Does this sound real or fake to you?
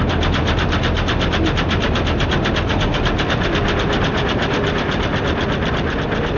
real